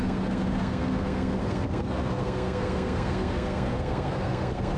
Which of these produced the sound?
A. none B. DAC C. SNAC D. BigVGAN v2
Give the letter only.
C